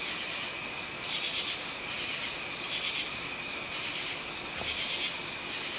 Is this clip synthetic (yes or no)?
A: no